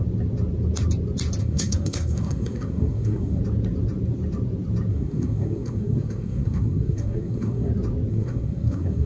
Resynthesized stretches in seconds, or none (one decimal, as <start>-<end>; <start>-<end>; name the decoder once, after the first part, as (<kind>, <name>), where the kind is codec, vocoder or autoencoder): 1.4-3.4 (codec, SNAC); 4.9-7.7; 8.1-9.1